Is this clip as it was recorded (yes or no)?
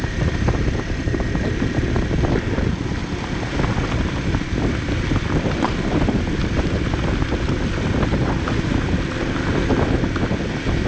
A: yes